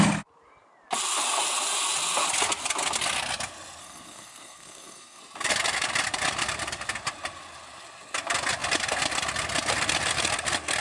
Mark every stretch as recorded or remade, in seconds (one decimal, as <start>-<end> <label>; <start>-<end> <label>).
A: 0.0-3.8 recorded; 3.8-5.2 remade; 5.2-10.8 recorded